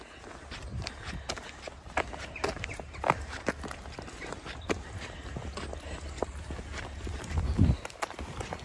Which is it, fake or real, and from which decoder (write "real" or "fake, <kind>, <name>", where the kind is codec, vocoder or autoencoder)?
real